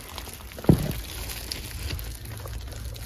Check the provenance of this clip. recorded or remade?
recorded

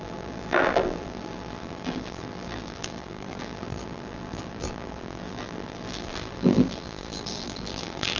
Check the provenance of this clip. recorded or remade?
remade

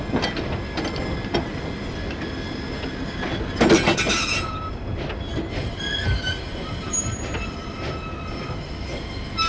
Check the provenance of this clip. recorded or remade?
recorded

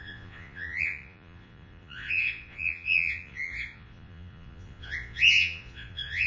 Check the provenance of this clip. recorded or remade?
remade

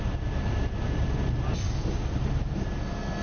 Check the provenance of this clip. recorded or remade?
recorded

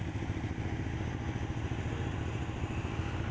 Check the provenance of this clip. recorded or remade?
recorded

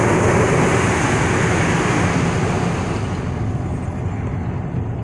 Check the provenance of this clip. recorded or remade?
recorded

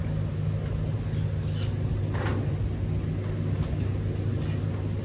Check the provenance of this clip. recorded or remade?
recorded